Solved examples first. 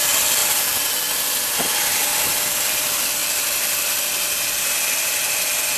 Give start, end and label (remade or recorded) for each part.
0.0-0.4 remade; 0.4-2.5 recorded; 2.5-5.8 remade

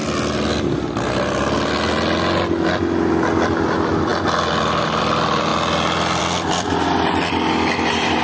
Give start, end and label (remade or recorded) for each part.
0.0-8.2 recorded